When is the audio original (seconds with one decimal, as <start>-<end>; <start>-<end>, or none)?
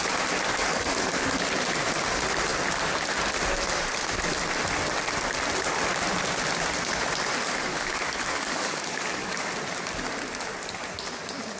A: 0.0-0.5; 1.4-7.7; 9.5-11.6